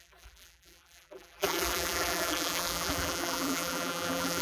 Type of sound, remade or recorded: remade